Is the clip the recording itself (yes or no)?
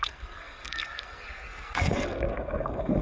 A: no